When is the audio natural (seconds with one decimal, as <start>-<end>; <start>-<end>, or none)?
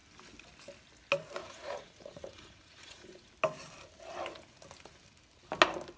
0.0-1.4; 3.3-6.0